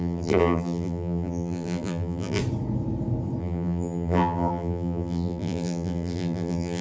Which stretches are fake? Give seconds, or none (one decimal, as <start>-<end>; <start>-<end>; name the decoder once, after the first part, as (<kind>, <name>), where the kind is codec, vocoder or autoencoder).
0.0-2.4 (vocoder, BigVGAN v2); 3.4-6.8